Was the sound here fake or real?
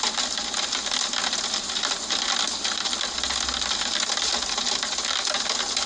real